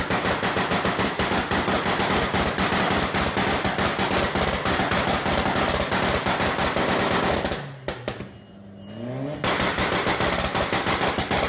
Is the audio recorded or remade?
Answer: recorded